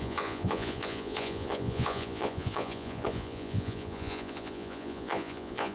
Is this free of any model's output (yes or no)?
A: no